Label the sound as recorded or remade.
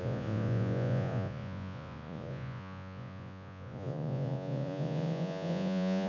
remade